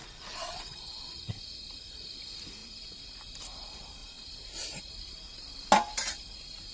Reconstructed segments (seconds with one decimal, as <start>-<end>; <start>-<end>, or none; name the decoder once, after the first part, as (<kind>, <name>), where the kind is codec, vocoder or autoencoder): 0.0-1.3 (vocoder, Vocos)